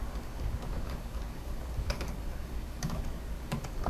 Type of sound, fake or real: fake